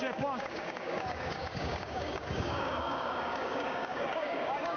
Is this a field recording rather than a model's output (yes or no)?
no